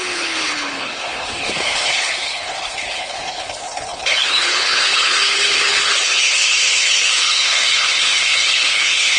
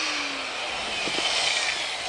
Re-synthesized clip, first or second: first